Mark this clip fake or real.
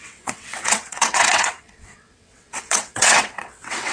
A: fake